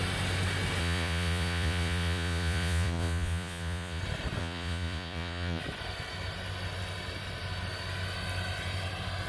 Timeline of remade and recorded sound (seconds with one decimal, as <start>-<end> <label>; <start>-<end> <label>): 0.0-0.8 recorded; 0.8-4.0 remade; 4.0-4.4 recorded; 4.4-5.6 remade; 5.6-9.3 recorded